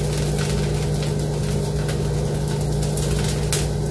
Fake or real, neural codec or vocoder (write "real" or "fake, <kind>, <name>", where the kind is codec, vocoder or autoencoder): real